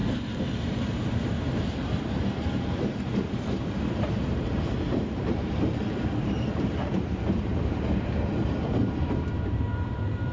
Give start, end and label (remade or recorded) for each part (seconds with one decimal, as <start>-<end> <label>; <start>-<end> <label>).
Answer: 0.0-0.7 recorded; 0.7-10.3 remade

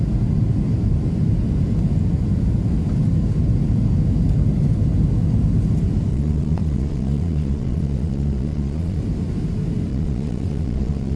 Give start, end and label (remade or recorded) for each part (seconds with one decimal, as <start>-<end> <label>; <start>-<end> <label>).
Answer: 0.0-6.1 recorded; 6.1-9.0 remade; 9.0-9.9 recorded; 9.9-11.2 remade

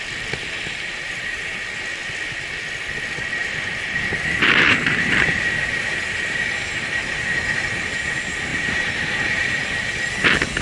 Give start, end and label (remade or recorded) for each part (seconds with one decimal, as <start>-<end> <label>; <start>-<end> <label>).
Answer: 0.0-0.9 recorded; 0.9-1.6 remade; 1.6-3.4 recorded; 3.4-7.4 remade; 7.4-8.5 recorded; 8.5-9.5 remade; 9.5-10.6 recorded

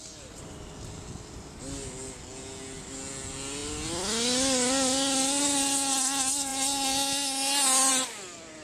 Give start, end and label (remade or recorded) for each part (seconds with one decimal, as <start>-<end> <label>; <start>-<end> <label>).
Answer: 0.0-8.6 recorded

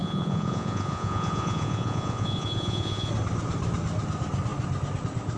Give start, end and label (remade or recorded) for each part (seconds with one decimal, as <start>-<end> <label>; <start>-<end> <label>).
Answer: 0.0-3.1 remade; 3.1-5.4 recorded

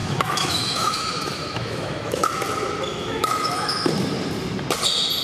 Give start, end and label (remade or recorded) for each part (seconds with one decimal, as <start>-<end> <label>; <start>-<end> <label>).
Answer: 0.0-2.3 remade; 2.3-2.9 recorded; 2.9-3.9 remade; 3.9-5.2 recorded

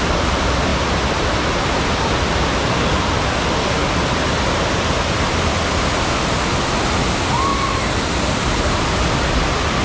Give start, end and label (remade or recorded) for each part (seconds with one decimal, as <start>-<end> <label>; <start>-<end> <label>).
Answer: 0.0-7.5 recorded; 7.5-8.8 remade; 8.8-9.8 recorded